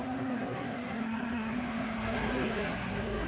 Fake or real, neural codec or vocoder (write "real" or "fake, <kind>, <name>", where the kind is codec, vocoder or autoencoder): fake, codec, SNAC